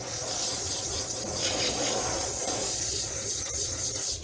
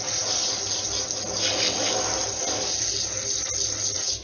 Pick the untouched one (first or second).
second